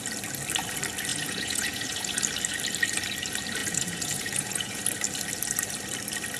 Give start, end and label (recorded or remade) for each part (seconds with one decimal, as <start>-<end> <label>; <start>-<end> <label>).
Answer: 0.0-1.1 recorded; 1.1-2.2 remade; 2.2-3.6 recorded; 3.6-4.8 remade; 4.8-6.4 recorded